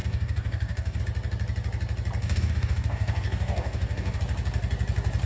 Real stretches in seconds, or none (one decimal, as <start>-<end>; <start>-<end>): 1.0-2.2; 4.2-5.3